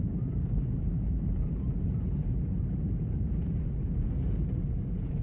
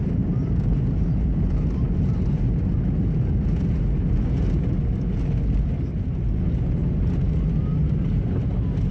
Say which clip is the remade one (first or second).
first